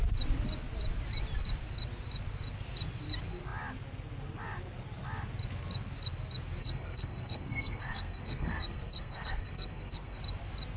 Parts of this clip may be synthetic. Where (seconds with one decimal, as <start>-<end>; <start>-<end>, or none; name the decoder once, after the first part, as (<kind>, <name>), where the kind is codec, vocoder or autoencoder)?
6.6-10.2 (codec, SNAC)